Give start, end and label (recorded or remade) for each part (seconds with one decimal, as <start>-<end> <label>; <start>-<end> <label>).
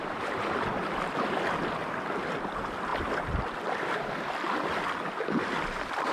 0.0-0.8 remade; 0.8-6.1 recorded